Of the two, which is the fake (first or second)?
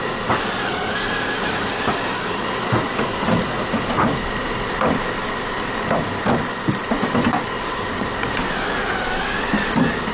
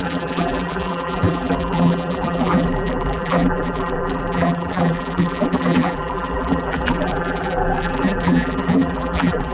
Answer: second